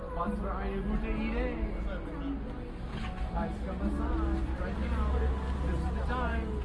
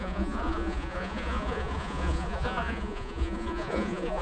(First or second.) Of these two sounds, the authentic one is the first